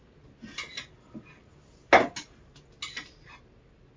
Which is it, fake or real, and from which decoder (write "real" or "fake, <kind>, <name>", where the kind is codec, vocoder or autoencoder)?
real